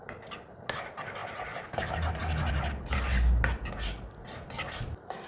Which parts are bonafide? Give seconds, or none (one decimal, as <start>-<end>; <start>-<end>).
0.0-5.3

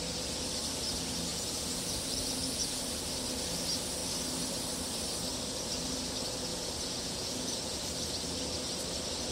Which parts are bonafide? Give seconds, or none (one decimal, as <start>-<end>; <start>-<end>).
0.0-1.3; 2.8-6.5; 7.8-9.3

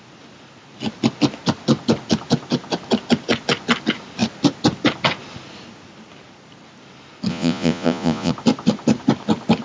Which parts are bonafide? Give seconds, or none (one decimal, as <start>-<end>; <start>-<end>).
0.0-7.3; 8.3-9.6

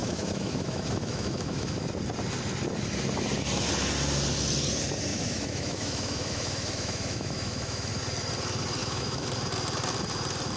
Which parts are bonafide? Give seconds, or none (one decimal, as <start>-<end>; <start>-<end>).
1.9-5.1; 7.9-8.8; 9.3-10.6

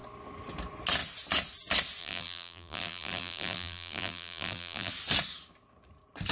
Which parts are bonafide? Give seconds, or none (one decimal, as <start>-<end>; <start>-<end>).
0.0-2.0; 4.9-6.3

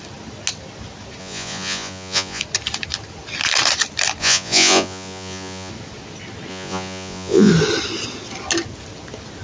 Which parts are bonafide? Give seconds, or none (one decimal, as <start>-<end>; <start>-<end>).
0.0-1.2; 2.4-4.2; 5.7-6.5; 7.5-9.4

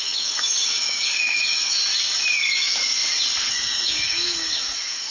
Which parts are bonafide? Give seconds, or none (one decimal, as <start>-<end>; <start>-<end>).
1.8-2.4; 3.0-3.5

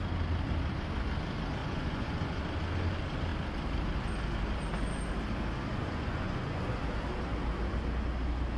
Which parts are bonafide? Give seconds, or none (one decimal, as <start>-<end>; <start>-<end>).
0.0-1.6; 2.4-5.7; 6.8-8.6